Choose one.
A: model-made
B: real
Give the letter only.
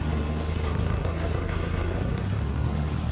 A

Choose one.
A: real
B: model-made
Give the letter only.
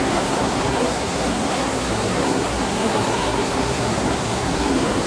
B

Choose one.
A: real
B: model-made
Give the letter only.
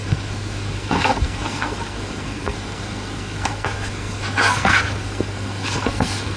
B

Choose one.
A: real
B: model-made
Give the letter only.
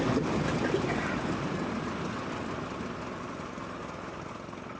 A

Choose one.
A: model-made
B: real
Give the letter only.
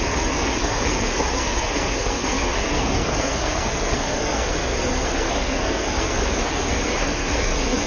A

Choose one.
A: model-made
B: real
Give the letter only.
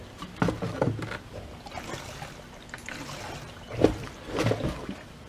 B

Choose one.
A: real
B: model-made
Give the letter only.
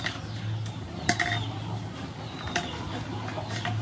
A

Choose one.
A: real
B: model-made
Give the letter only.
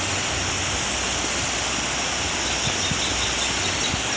A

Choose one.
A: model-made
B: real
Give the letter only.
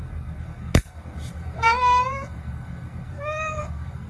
A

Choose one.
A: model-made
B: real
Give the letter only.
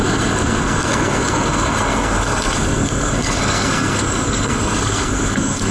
A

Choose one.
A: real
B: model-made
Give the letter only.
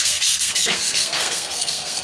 B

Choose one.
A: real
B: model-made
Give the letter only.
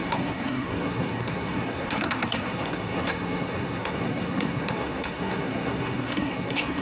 B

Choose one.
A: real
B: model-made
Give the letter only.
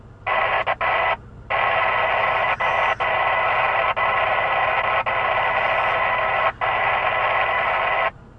A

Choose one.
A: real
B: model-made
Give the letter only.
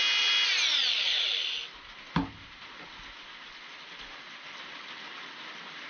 A